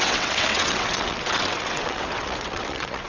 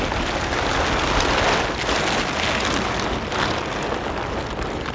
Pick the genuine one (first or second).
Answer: second